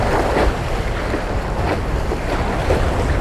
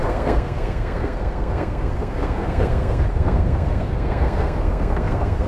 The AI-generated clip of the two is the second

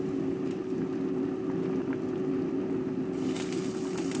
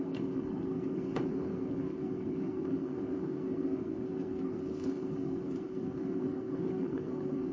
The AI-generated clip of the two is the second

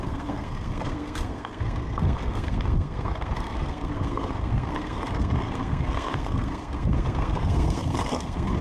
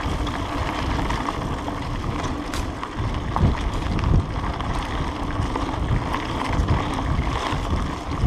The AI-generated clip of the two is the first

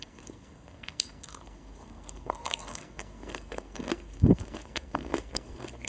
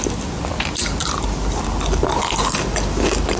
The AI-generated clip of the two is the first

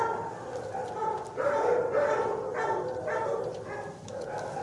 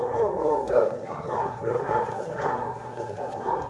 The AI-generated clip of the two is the second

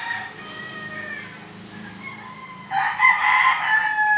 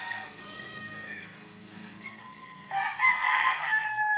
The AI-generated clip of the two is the second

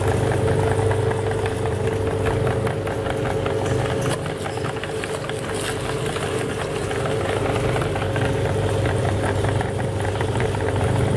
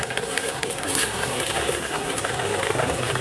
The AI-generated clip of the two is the second